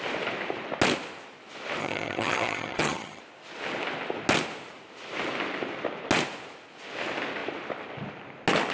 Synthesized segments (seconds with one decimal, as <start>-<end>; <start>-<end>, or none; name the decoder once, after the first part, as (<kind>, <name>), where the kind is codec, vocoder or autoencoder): 1.8-3.2 (vocoder, HiFi-GAN)